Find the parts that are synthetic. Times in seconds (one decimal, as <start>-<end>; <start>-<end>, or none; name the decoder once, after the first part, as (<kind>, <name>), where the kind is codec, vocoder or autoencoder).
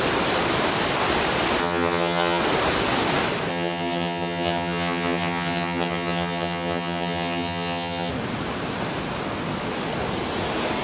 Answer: 1.6-2.4 (vocoder, HiFi-GAN); 3.5-8.1